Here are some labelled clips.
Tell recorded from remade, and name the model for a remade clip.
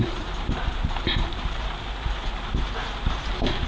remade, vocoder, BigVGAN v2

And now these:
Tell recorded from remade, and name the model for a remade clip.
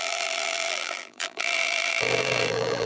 remade, vocoder, BigVGAN v2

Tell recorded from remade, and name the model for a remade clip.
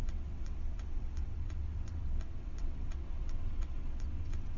remade, vocoder, WaveNeXt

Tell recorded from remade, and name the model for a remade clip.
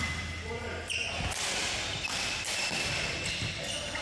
recorded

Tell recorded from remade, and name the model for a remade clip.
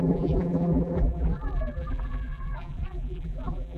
remade, vocoder, BigVGAN v2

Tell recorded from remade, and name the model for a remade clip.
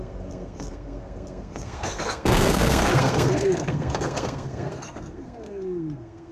remade, codec, SNAC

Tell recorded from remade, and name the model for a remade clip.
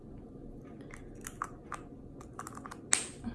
recorded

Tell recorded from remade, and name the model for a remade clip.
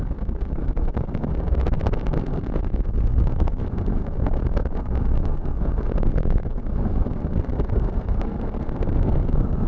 remade, codec, SNAC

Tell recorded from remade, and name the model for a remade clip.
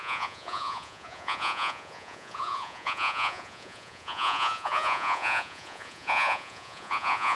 remade, vocoder, Vocos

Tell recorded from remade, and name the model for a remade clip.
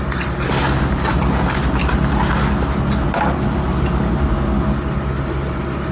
recorded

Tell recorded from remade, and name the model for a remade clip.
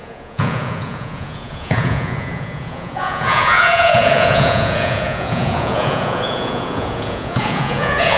remade, vocoder, Vocos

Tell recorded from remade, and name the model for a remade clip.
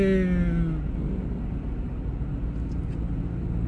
recorded